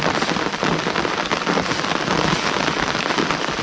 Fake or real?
real